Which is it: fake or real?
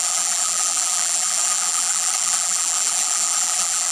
fake